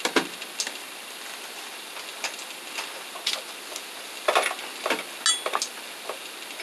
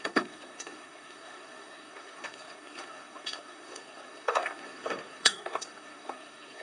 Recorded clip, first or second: first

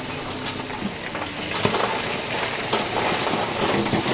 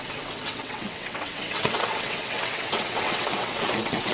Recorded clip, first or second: first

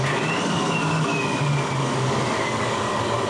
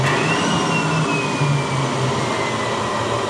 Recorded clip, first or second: second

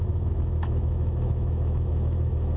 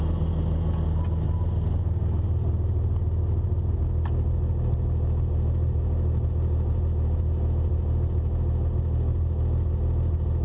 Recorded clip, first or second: second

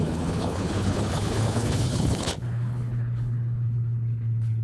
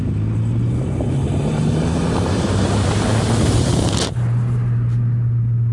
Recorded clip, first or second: second